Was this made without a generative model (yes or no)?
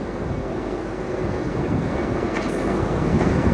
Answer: no